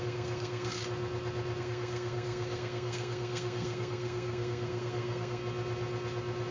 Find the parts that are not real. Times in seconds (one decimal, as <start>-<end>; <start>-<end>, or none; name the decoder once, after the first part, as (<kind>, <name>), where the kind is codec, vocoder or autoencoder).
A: 0.0-0.8 (codec, SNAC); 1.6-5.4